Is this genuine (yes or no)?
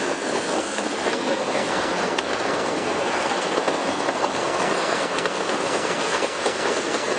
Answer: no